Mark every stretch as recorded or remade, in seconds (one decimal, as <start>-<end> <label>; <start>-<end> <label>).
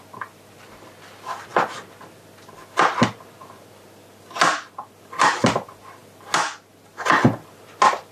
0.0-8.1 recorded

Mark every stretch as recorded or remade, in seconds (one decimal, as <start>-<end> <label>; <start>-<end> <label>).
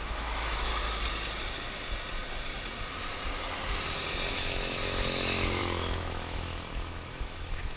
0.0-0.7 remade; 0.7-4.3 recorded; 4.3-7.8 remade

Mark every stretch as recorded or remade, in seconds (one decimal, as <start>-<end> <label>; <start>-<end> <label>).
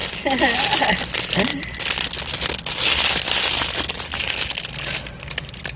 0.0-5.8 recorded